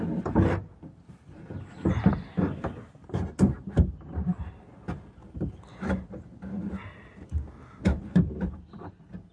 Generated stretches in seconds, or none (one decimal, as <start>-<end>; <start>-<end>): 4.7-5.5